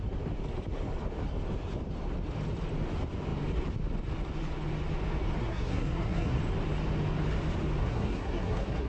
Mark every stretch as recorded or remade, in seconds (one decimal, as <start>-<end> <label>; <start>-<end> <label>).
0.0-5.4 recorded; 5.4-6.4 remade; 6.4-7.8 recorded; 7.8-8.9 remade